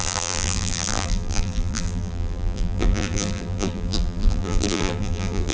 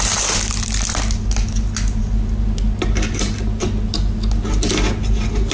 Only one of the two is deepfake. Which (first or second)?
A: first